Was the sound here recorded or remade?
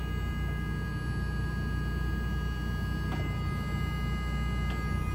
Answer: recorded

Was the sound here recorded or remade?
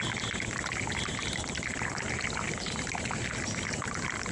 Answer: recorded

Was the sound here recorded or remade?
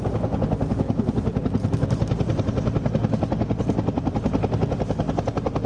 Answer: recorded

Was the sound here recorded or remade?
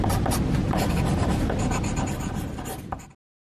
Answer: recorded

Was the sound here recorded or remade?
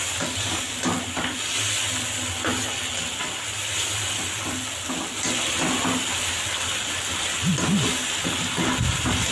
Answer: recorded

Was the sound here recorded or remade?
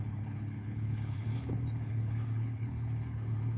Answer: remade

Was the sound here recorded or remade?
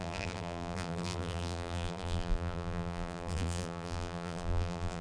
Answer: remade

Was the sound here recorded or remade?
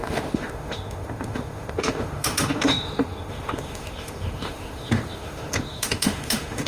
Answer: remade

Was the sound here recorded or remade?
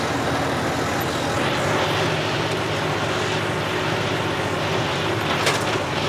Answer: recorded